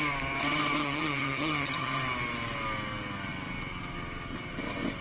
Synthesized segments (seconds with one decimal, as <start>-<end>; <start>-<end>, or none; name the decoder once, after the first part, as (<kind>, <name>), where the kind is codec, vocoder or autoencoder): 0.8-2.0 (vocoder, HiFi-GAN)